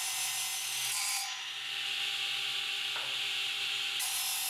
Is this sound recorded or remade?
recorded